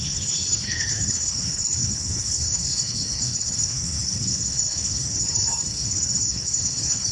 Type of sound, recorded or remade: remade